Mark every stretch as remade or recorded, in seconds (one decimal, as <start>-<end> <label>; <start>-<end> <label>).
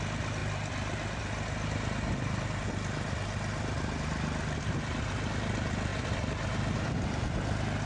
0.0-7.9 recorded